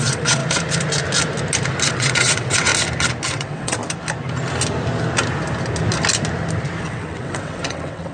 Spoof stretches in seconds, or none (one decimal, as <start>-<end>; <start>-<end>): 0.0-0.4; 1.9-2.7; 3.3-3.8; 6.8-8.1